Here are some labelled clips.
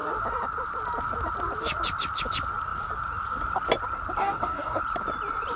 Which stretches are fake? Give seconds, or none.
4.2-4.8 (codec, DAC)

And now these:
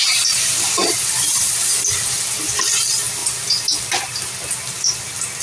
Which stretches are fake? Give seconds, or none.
none

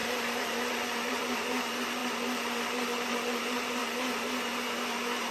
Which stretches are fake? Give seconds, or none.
0.0-3.8 (vocoder, BigVGAN v2)

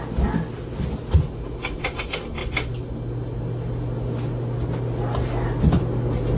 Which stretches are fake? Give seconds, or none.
none

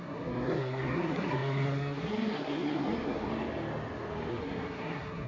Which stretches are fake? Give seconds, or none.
0.0-3.3 (codec, SNAC); 4.3-5.3